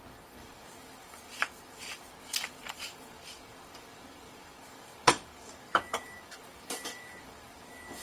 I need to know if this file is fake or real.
fake